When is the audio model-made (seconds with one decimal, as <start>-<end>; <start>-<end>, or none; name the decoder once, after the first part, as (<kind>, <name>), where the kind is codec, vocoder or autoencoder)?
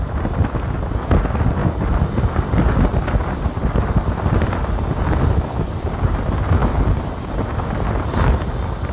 none